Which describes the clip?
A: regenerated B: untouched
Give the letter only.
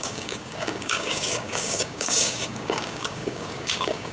A